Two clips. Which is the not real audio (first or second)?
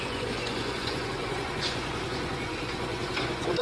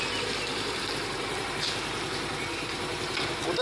first